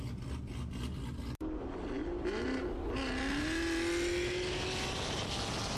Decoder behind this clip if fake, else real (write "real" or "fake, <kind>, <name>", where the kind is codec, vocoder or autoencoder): real